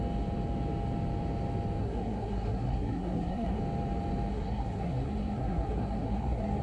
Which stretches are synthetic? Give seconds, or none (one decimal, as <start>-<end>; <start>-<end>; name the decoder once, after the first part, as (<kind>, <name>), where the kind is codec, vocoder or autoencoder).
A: 1.8-3.6 (codec, SNAC); 4.3-6.6

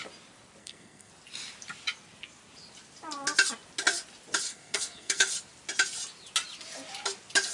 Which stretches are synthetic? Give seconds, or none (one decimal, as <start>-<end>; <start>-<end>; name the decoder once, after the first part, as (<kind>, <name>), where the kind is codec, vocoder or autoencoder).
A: 0.6-1.1 (codec, SNAC); 4.5-5.3

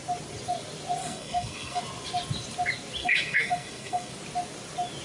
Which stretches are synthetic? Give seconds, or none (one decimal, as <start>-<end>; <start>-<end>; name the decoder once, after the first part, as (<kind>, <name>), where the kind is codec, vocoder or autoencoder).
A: 1.0-1.8 (codec, SNAC); 3.0-4.1

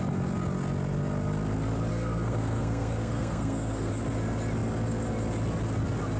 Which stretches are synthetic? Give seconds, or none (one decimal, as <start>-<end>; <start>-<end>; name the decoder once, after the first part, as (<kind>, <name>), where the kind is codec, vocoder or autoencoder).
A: 1.9-3.9 (codec, SNAC)

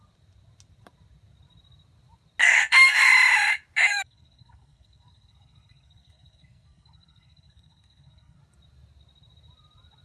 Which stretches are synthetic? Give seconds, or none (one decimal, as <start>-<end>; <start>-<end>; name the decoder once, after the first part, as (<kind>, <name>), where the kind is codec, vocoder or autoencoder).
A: 2.4-3.1 (codec, SNAC); 3.9-8.4

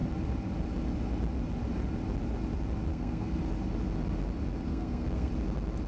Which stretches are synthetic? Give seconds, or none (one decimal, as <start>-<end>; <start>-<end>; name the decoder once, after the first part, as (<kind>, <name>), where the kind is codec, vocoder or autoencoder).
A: 2.9-3.4 (codec, SNAC); 4.7-5.3

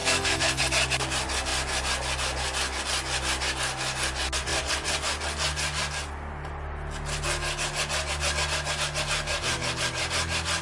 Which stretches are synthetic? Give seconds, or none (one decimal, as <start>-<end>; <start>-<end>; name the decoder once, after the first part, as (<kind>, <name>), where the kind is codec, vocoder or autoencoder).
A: 0.0-0.6 (codec, SNAC)

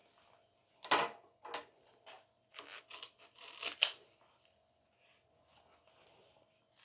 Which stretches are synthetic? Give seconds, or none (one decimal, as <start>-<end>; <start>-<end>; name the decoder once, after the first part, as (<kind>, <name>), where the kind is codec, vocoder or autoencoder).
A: none